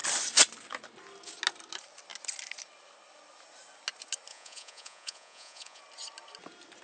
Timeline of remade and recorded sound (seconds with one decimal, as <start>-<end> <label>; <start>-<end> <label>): 0.0-4.3 recorded; 4.3-5.8 remade; 5.8-6.8 recorded